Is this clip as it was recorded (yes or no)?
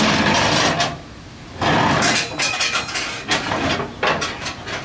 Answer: yes